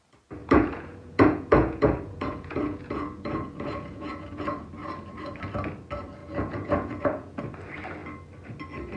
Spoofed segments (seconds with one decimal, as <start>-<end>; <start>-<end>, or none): 0.4-4.7; 6.2-7.4